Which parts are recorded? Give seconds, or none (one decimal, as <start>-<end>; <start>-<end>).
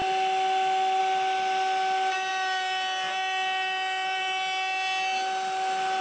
0.0-6.0